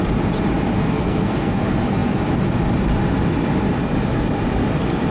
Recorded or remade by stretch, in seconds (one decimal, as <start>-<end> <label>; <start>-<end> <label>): 0.0-0.8 recorded; 0.8-1.6 remade; 1.6-5.1 recorded